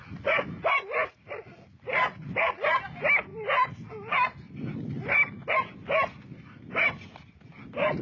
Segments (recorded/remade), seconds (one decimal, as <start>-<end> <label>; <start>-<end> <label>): 0.0-8.0 recorded